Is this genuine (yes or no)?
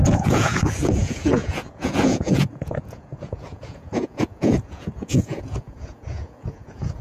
no